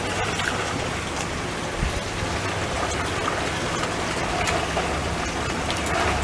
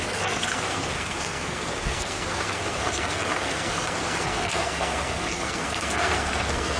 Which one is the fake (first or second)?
second